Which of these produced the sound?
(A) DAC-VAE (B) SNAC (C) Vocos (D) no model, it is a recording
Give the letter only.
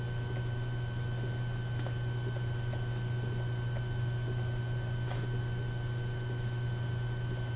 D